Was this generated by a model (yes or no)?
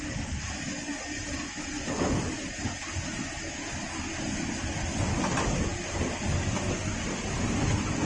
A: no